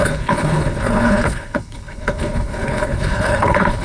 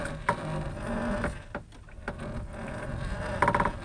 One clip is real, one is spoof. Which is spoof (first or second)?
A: first